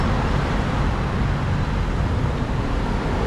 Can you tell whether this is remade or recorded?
recorded